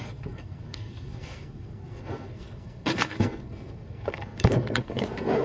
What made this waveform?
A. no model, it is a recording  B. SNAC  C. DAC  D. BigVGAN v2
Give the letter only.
B